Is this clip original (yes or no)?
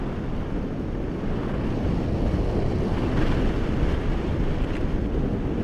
yes